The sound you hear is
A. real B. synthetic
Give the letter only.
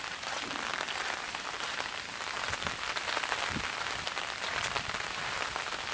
A